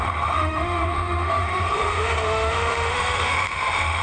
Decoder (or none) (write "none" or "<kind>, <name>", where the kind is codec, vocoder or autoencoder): autoencoder, DAC-VAE